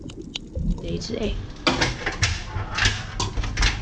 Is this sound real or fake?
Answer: real